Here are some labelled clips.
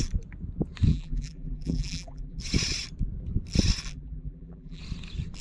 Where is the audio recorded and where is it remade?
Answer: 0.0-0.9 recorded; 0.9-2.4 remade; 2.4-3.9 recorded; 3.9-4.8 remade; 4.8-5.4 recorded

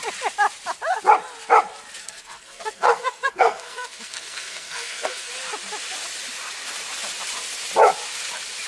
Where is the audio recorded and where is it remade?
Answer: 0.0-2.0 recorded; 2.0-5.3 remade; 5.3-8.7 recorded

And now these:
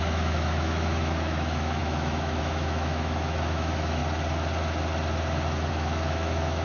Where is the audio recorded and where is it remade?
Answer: 0.0-4.0 remade; 4.0-5.7 recorded; 5.7-6.6 remade

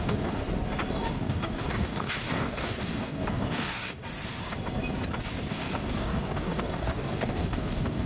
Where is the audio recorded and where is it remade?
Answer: 0.0-0.4 remade; 0.4-1.1 recorded; 1.1-4.0 remade; 4.0-5.5 recorded; 5.5-8.1 remade

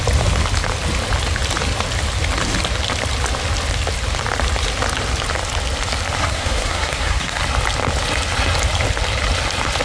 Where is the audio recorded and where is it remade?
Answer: 0.0-6.2 recorded; 6.2-7.4 remade; 7.4-9.8 recorded